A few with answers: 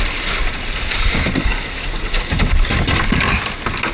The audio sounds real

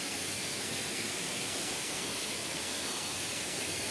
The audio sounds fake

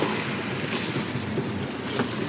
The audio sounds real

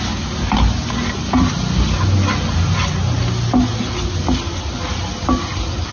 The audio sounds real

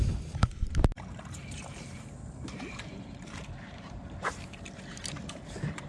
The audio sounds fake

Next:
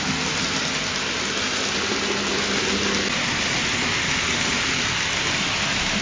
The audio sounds real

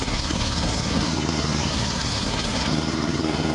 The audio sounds fake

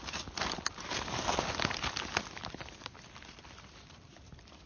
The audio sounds real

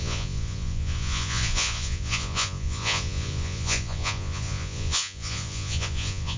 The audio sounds fake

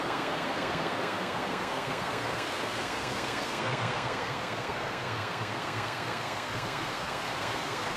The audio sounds fake